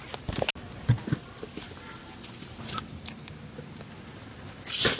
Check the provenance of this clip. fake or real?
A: real